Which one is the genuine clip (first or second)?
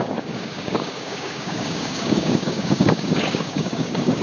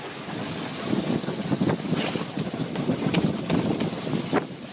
second